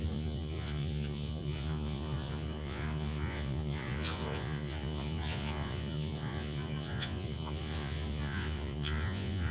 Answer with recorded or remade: remade